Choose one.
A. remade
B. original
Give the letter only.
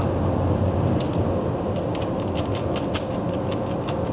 B